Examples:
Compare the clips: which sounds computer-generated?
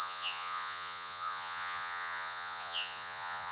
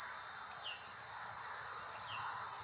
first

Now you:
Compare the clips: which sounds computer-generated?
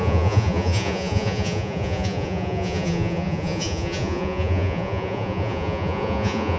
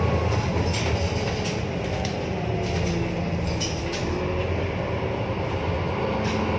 first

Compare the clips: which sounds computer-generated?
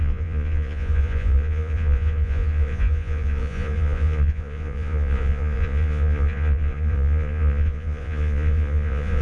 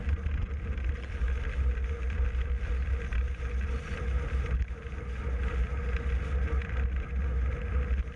first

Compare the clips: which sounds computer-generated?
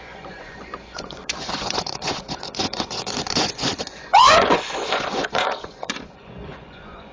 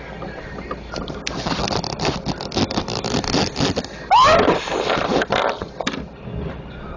first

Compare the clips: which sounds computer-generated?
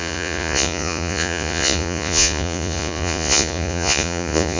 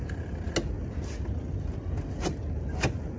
first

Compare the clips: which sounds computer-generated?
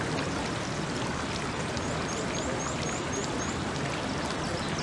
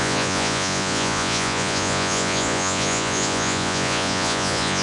second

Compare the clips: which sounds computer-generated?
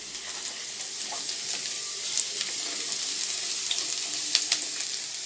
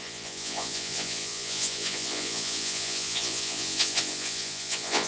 second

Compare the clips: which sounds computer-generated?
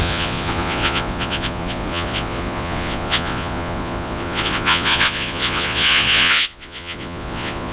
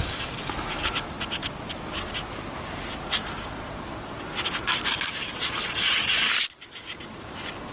first